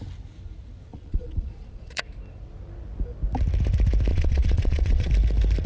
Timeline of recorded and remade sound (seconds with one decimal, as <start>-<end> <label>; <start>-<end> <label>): 0.0-0.9 recorded; 0.9-2.0 remade; 2.0-4.1 recorded; 4.1-5.1 remade; 5.1-5.7 recorded